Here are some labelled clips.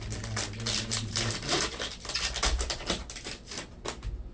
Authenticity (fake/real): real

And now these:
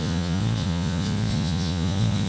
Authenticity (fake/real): fake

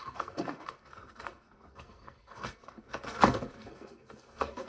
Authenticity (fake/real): fake